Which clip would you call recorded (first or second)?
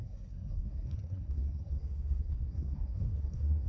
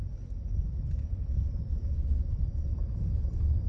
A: second